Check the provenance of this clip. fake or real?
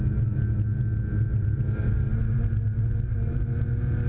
real